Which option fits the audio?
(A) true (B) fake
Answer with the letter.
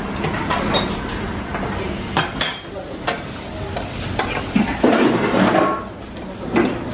A